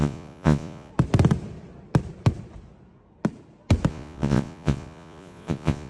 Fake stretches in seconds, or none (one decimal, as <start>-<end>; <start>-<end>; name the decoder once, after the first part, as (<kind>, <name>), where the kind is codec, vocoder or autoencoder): 0.0-0.9 (vocoder, Vocos); 3.9-5.9